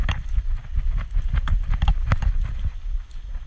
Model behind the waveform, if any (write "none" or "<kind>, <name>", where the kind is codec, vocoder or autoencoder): none